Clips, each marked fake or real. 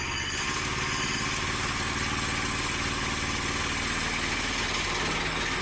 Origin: real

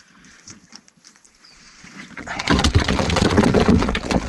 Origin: fake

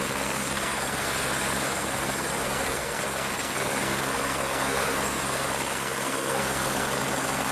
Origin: fake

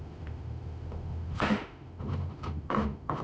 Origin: fake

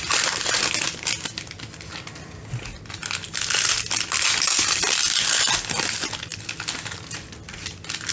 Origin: real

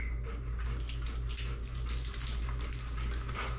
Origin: real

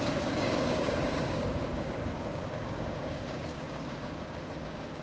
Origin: fake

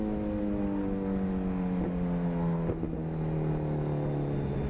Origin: real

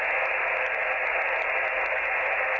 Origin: real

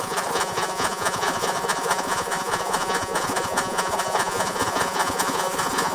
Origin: fake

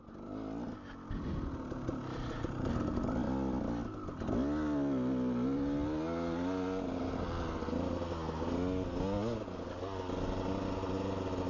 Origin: real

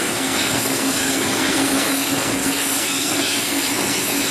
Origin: fake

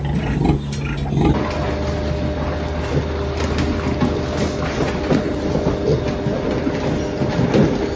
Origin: real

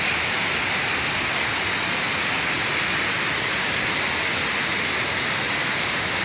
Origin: real